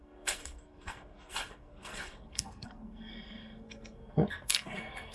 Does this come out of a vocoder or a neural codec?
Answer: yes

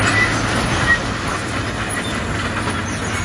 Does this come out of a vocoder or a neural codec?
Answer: no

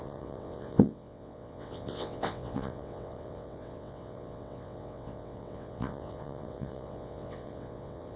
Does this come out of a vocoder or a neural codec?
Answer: yes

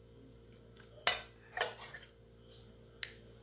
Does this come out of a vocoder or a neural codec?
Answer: no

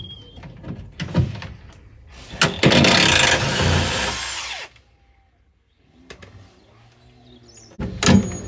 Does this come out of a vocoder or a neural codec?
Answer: no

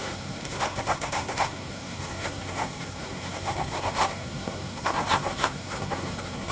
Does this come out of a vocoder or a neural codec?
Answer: yes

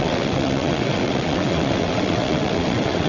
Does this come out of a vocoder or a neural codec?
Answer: yes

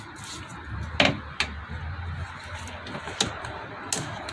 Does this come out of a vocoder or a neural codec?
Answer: no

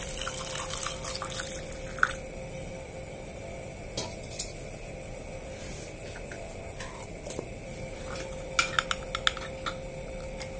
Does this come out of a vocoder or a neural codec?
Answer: no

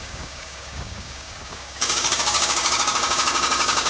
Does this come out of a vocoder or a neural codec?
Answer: yes